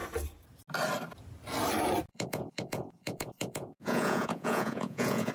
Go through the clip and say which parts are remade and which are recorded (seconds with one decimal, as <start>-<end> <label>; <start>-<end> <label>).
0.0-2.1 recorded; 2.1-5.3 remade